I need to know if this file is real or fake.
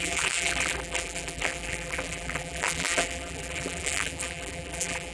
fake